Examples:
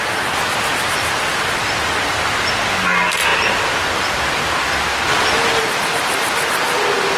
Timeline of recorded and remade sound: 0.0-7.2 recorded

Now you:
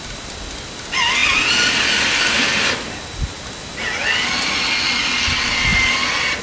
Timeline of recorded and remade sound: 0.0-6.4 recorded

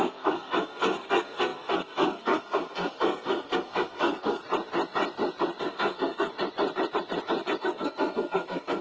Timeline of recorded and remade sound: 0.0-4.4 remade; 4.4-5.6 recorded; 5.6-6.3 remade; 6.3-7.6 recorded; 7.6-8.8 remade

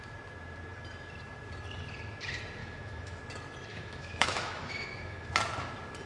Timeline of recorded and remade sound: 0.0-2.6 recorded; 2.6-3.2 remade; 3.2-3.7 recorded; 3.7-5.3 remade; 5.3-6.1 recorded

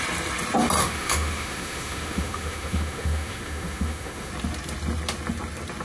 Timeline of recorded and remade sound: 0.0-0.8 recorded; 0.8-4.3 remade; 4.3-5.8 recorded

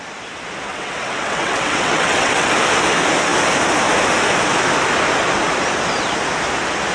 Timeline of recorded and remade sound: 0.0-0.7 recorded; 0.7-2.5 remade; 2.5-6.9 recorded

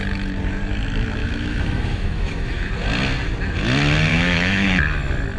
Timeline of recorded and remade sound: 0.0-1.2 recorded; 1.2-2.7 remade; 2.7-4.1 recorded; 4.1-4.8 remade; 4.8-5.4 recorded

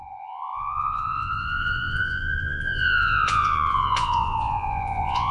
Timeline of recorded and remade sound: 0.0-5.3 remade